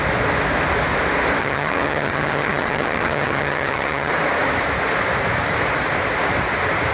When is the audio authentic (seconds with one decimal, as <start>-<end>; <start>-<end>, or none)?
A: 0.0-1.4; 4.1-6.9